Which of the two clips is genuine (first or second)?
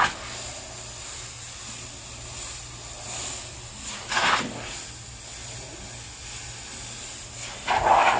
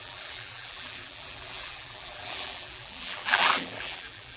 first